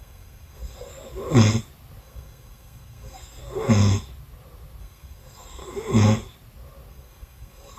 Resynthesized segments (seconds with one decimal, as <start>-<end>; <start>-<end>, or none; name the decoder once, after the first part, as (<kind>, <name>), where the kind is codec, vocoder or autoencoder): 0.0-0.9 (codec, SNAC); 2.0-3.4; 4.8-5.6; 6.9-7.8